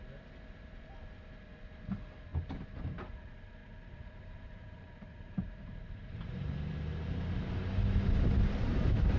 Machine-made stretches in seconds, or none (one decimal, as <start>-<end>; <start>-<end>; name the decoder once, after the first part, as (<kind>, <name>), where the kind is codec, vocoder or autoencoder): 2.3-3.1 (vocoder, BigVGAN v2); 3.6-6.7